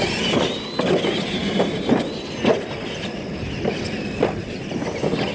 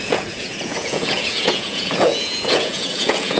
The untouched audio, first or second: first